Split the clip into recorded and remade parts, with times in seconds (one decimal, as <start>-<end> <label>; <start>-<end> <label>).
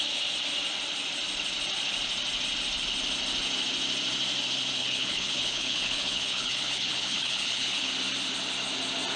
0.0-4.8 recorded; 4.8-7.9 remade; 7.9-9.2 recorded